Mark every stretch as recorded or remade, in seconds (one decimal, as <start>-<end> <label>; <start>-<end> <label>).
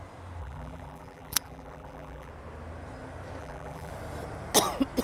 0.0-0.4 recorded; 0.4-2.3 remade; 2.3-3.4 recorded; 3.4-3.9 remade; 3.9-5.0 recorded